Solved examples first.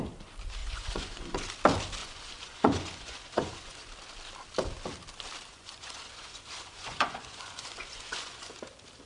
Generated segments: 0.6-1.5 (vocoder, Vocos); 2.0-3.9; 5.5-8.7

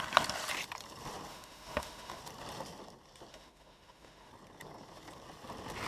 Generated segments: 1.3-2.2 (autoencoder, DAC-VAE); 3.3-4.3

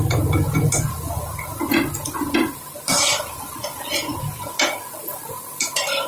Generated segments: none

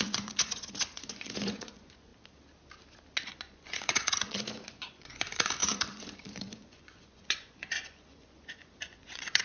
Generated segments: 0.0-2.1 (vocoder, Vocos); 3.3-9.4

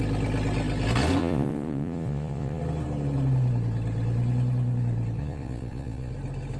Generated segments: 1.2-2.6 (vocoder, Vocos); 5.2-6.1

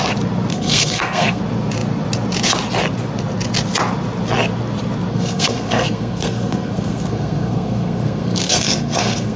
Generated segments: 0.5-1.4 (codec, SNAC); 5.1-9.4

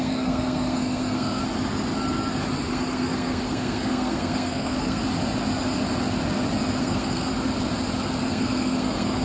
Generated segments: 0.0-1.4 (codec, SNAC); 2.7-5.0; 6.8-7.3; 8.2-9.2

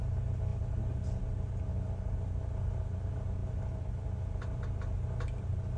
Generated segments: none